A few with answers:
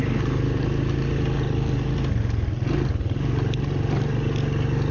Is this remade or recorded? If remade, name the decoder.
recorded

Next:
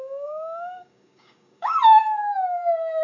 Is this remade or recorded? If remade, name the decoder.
remade, codec, DAC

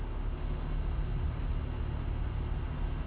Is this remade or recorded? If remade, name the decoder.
recorded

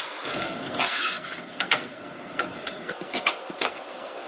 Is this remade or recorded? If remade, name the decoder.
remade, codec, SNAC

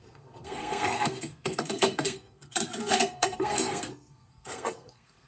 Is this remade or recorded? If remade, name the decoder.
remade, codec, SNAC